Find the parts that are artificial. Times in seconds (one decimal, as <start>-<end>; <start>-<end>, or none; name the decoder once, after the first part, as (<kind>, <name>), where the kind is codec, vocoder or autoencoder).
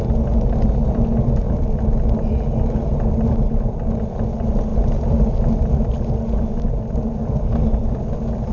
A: none